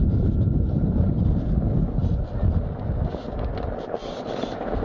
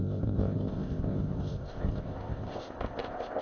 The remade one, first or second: second